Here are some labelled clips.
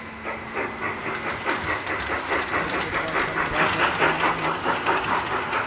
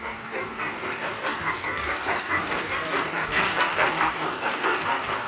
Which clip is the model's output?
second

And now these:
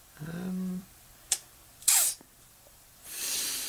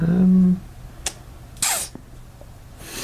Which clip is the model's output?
first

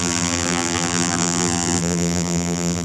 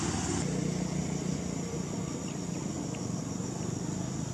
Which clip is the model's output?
first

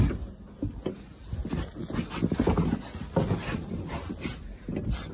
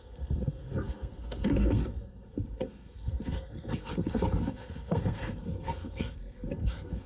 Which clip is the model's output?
second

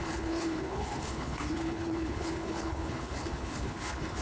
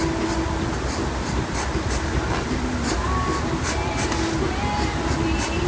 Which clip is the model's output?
first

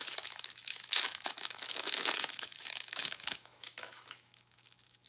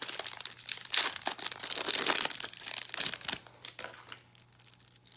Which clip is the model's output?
first